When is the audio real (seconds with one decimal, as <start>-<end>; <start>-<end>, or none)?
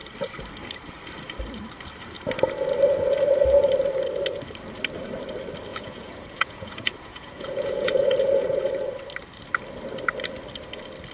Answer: 0.0-5.7; 8.7-11.1